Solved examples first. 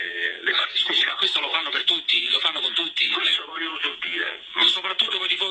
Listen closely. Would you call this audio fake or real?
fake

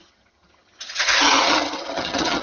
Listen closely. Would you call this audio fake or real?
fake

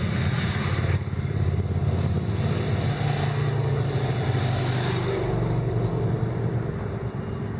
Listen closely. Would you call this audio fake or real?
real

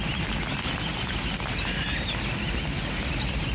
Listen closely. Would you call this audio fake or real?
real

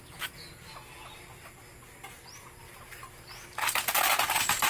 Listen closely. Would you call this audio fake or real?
real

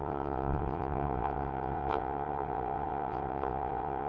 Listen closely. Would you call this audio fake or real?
fake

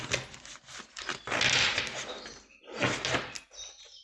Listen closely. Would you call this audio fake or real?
real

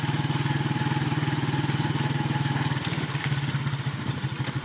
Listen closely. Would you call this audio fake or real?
real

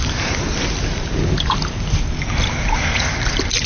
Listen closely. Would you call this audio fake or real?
real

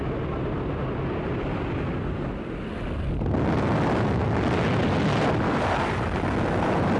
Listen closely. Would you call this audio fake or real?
real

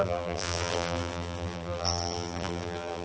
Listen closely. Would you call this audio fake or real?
fake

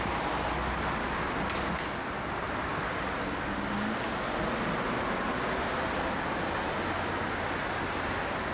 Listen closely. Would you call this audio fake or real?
real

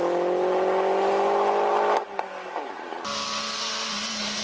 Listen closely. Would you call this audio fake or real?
real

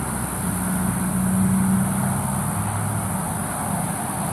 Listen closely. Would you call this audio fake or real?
real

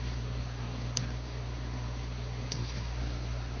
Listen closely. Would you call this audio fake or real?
fake